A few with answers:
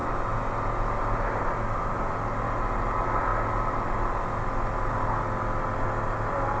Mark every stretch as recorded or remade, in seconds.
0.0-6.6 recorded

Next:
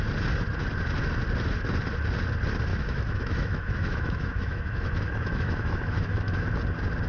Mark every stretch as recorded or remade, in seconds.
0.0-2.7 recorded; 2.7-6.5 remade; 6.5-7.1 recorded